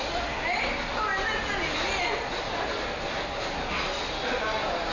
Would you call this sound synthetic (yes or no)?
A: no